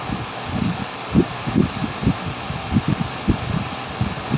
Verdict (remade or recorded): recorded